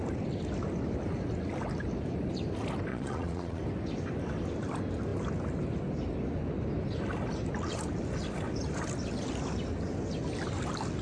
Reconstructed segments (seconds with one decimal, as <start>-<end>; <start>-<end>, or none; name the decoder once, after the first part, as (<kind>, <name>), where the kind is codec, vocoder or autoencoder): 2.9-3.6 (vocoder, Vocos)